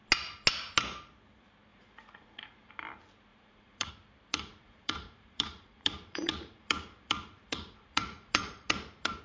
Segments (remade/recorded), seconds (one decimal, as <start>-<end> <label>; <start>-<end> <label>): 0.0-1.7 recorded; 1.7-2.7 remade; 2.7-3.3 recorded; 3.3-3.9 remade; 3.9-4.3 recorded; 4.3-9.2 remade